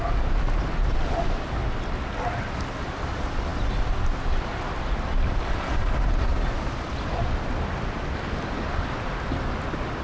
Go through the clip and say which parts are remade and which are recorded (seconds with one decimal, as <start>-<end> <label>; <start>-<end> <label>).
0.0-10.0 recorded